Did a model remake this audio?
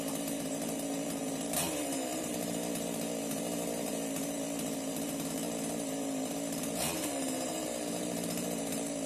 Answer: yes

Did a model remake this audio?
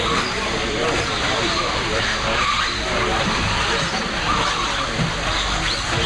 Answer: no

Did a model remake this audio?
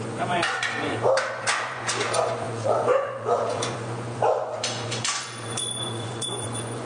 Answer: yes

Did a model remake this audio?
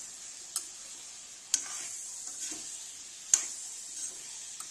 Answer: no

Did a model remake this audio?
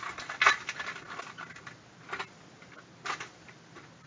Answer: no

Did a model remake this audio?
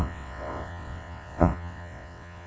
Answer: yes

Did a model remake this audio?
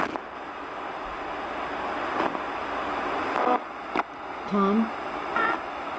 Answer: no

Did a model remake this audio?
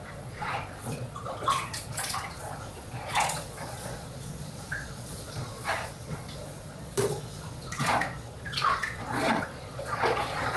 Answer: yes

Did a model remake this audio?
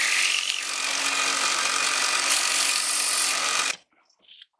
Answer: no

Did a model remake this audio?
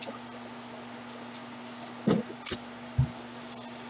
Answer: no